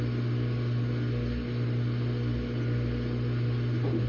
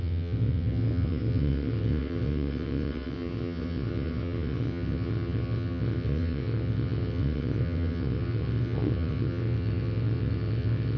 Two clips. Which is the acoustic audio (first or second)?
first